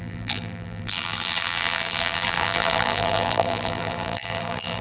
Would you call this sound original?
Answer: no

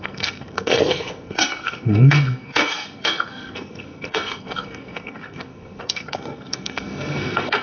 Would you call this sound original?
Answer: no